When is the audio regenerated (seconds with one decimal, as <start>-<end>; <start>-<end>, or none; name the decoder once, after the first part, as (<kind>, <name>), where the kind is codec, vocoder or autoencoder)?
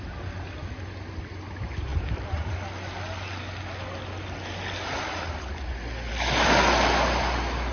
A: none